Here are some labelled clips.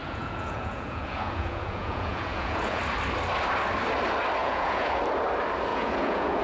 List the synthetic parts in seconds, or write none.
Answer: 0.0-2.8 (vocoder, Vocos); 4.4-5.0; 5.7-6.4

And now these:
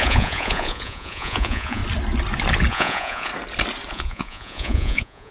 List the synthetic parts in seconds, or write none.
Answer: 0.0-1.8 (vocoder, Vocos); 2.7-3.3; 3.9-5.3

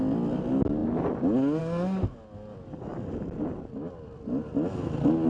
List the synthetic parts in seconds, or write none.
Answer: none

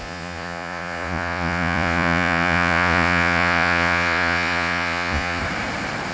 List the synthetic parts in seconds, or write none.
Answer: 0.0-5.4 (vocoder, Vocos)